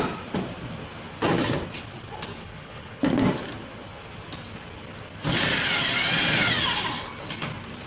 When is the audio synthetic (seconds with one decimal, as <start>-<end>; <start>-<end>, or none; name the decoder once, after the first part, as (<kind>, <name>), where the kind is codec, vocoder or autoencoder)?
2.3-3.0 (codec, HILCodec)